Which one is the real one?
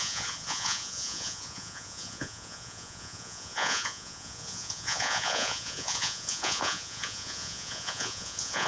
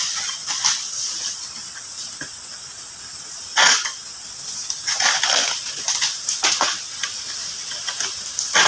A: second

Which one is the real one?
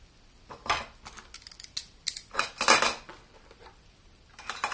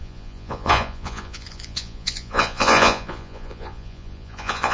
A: first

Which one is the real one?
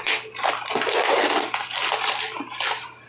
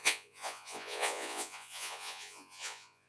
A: first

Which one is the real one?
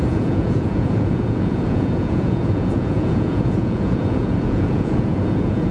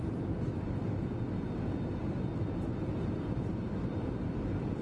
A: second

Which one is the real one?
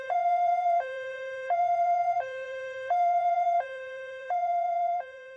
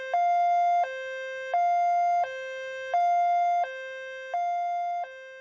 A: second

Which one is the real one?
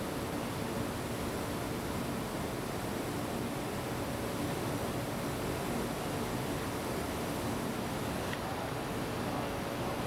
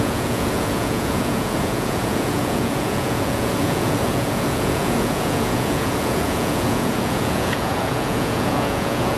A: first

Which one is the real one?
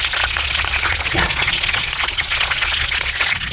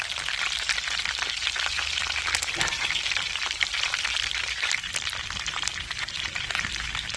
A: second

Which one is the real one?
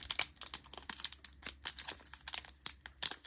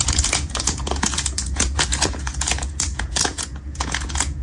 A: first